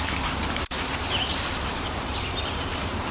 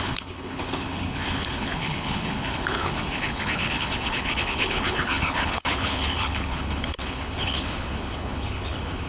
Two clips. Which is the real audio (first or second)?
first